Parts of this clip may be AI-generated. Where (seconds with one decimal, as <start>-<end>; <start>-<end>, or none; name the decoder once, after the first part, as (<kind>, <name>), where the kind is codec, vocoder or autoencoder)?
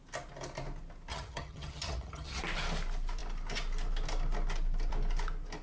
1.1-2.4 (vocoder, HiFi-GAN)